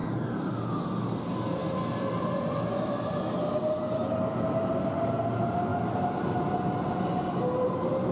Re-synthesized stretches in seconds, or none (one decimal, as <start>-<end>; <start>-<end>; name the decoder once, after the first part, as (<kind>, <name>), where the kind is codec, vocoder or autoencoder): none